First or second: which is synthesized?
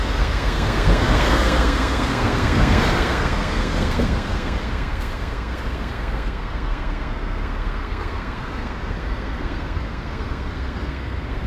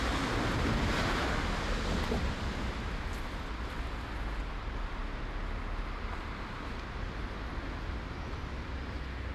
first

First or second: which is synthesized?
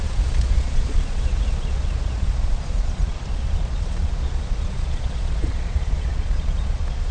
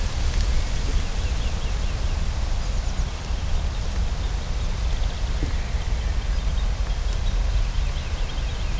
first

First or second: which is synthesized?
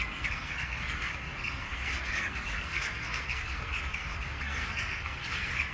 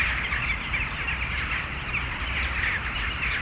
first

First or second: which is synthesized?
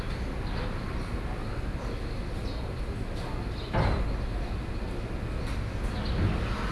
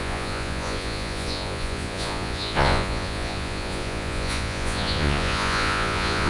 second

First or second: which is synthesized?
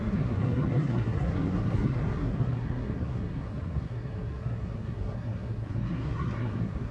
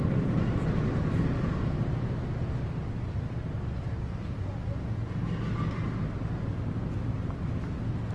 first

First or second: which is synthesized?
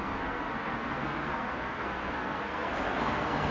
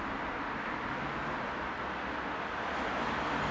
first